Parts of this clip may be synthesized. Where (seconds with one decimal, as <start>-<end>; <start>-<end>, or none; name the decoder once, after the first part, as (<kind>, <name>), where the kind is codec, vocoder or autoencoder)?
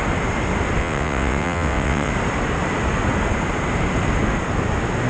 0.8-2.1 (vocoder, WaveNeXt)